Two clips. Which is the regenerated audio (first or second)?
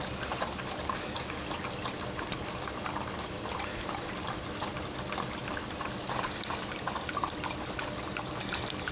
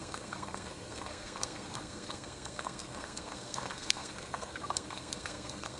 second